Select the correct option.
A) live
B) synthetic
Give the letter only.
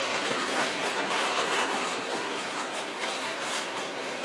B